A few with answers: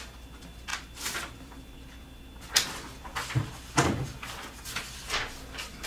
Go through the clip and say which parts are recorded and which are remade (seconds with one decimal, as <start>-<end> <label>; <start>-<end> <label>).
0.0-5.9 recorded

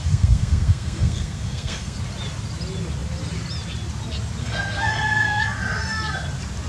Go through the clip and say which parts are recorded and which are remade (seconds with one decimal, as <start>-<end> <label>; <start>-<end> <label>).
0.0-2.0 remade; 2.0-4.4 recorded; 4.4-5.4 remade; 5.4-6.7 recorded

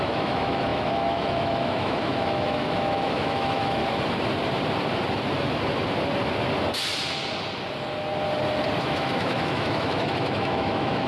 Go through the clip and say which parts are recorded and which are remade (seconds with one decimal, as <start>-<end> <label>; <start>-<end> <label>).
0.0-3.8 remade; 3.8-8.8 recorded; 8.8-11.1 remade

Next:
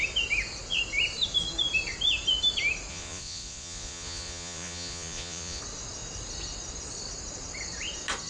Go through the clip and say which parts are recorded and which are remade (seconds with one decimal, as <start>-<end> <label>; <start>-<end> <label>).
0.0-2.9 recorded; 2.9-5.6 remade; 5.6-8.3 recorded